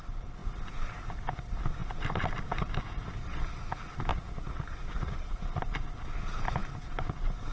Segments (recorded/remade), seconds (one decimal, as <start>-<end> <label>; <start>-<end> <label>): 0.0-4.1 recorded; 4.1-5.4 remade; 5.4-7.5 recorded